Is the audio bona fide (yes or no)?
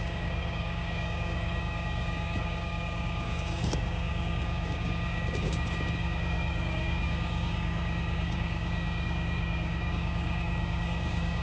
no